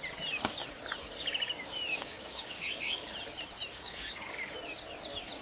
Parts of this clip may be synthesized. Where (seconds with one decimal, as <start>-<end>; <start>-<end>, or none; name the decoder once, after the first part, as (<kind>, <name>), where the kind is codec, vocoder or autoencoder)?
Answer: 1.9-3.1 (codec, DAC); 3.7-4.3